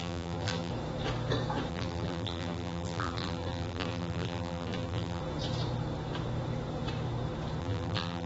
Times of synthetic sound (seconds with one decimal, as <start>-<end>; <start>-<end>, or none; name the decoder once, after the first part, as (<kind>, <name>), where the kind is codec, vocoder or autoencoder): 0.0-0.7 (vocoder, BigVGAN v2); 1.7-5.2; 7.6-8.3